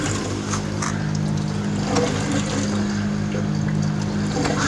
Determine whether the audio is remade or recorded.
recorded